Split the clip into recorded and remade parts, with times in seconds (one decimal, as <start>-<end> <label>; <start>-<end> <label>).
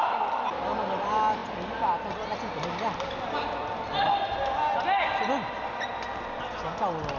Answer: 0.0-7.2 recorded